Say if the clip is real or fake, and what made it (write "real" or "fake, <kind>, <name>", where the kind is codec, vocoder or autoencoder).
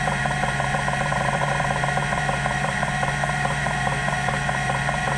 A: fake, vocoder, BigVGAN v2